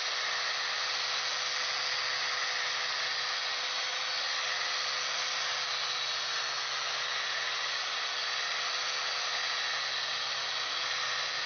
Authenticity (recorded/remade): recorded